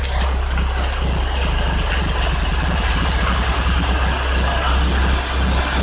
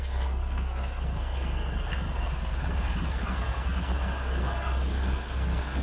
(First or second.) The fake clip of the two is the second